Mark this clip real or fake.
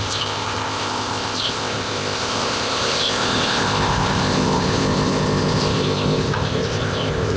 fake